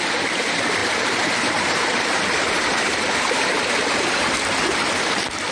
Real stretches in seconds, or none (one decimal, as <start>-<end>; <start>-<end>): 0.0-0.8; 3.6-5.5